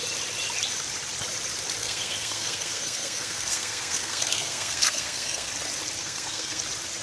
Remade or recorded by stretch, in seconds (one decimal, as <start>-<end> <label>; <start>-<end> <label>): 0.0-1.8 recorded; 1.8-5.5 remade; 5.5-6.0 recorded; 6.0-6.6 remade; 6.6-7.0 recorded